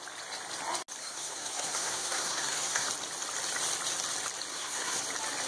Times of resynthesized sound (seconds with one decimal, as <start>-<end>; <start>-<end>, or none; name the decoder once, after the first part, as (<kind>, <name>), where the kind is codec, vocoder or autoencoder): 1.0-2.9 (codec, SNAC); 4.5-5.0

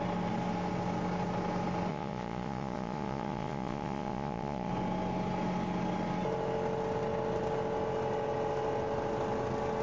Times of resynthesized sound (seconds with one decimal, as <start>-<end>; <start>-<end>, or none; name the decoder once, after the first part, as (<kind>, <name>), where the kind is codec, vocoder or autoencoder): 1.9-4.7 (vocoder, Vocos)

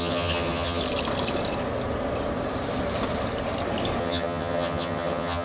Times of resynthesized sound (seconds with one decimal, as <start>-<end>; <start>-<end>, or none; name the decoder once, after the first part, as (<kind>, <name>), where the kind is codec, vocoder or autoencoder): 0.0-0.8 (vocoder, HiFi-GAN); 4.0-5.4

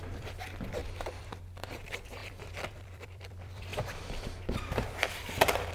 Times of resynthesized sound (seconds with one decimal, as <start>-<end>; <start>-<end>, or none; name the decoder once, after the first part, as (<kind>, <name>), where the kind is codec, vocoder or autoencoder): 0.0-5.7 (vocoder, BigVGAN v2)

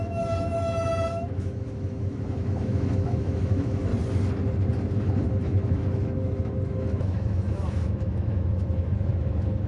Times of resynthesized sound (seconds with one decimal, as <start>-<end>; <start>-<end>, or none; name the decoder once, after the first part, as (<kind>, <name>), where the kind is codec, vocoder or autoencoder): 0.0-3.9 (autoencoder, DAC-VAE); 4.9-9.7